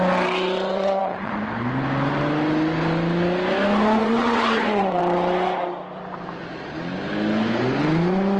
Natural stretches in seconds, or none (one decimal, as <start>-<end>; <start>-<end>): 0.0-0.7; 1.3-4.0; 5.0-8.4